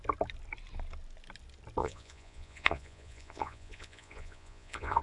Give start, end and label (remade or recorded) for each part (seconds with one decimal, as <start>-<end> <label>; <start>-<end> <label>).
0.0-1.8 recorded; 1.8-5.0 remade